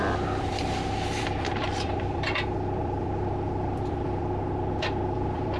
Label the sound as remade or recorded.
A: remade